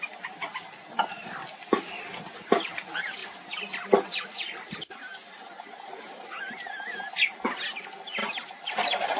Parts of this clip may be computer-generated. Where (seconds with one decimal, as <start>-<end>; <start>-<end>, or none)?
8.2-8.7